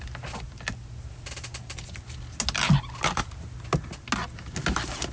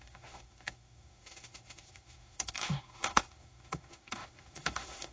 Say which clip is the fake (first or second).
second